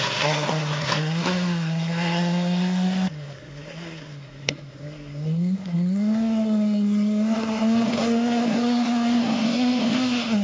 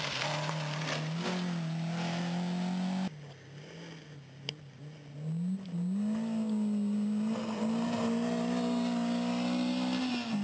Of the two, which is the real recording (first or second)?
second